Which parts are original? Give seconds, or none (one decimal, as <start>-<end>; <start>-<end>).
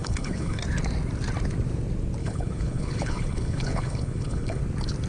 0.6-2.2; 4.6-5.1